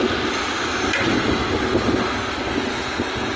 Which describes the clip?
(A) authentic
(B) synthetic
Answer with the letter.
A